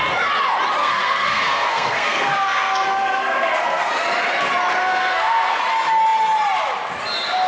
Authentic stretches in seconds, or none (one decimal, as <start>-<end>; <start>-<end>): 0.0-0.8; 3.9-4.8; 5.6-7.5